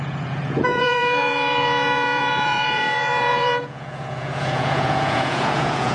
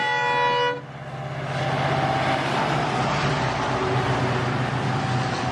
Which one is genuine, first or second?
second